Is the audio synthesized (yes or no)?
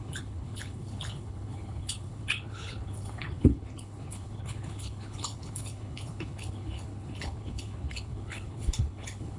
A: yes